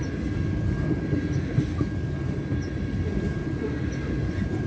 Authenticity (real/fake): real